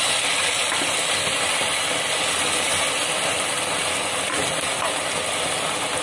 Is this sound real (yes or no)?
yes